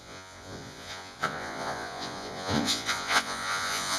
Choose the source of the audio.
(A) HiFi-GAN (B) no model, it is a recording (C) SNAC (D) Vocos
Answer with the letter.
D